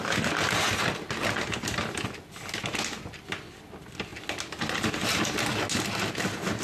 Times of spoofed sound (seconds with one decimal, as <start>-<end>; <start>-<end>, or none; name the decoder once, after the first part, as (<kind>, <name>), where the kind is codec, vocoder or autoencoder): none